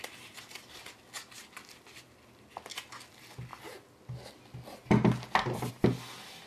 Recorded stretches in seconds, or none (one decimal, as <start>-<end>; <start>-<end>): 0.0-6.5